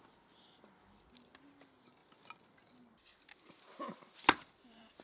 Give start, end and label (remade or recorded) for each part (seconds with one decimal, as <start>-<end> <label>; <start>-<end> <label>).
0.0-5.0 recorded